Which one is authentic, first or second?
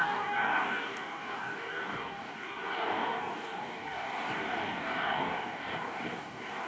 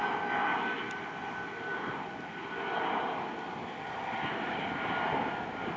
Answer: second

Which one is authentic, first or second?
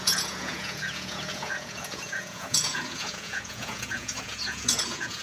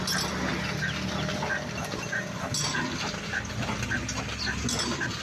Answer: second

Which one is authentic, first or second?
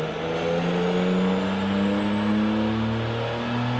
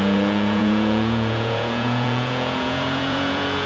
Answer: first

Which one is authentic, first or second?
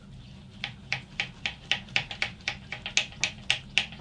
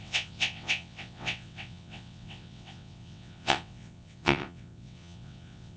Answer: first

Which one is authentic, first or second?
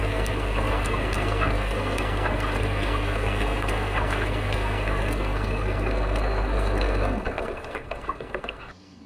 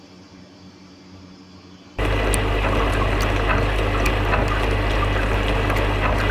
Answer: second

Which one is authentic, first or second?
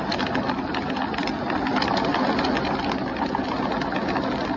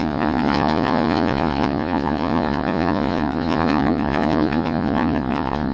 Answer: first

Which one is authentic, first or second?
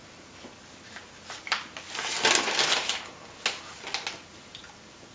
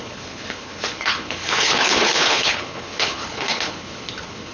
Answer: first